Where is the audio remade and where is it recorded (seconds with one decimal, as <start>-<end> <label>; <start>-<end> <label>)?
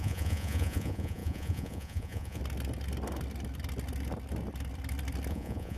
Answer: 0.0-2.4 remade; 2.4-5.3 recorded; 5.3-5.8 remade